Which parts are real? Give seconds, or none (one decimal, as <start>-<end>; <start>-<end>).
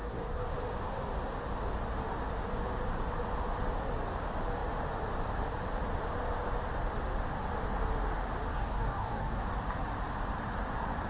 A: 0.5-8.5; 9.4-11.1